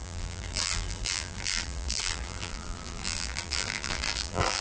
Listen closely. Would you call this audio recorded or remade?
remade